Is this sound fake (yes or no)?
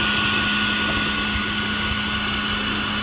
no